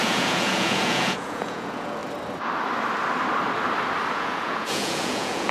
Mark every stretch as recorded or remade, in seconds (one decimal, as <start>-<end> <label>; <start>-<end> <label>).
0.0-2.0 remade; 2.0-4.1 recorded; 4.1-5.5 remade